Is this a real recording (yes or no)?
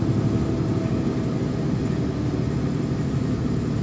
yes